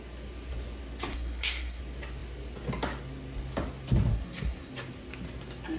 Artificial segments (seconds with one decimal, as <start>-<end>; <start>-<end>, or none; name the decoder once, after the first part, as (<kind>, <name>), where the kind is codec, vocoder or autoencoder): 1.1-1.8 (codec, SNAC); 4.1-4.7